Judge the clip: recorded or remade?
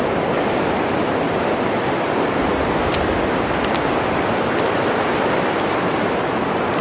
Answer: recorded